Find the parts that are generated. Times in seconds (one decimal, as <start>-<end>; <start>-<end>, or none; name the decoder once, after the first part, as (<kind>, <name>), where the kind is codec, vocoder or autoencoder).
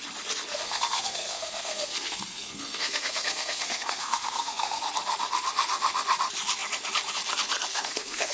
0.5-4.8 (codec, SNAC); 7.7-8.3